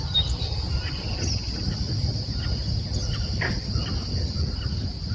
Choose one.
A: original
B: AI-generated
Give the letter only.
A